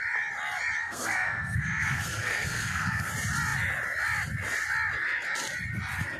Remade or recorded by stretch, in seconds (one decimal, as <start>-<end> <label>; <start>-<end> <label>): 0.0-0.8 recorded; 0.8-3.1 remade; 3.1-6.2 recorded